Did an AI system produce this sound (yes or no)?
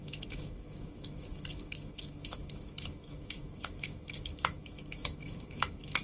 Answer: yes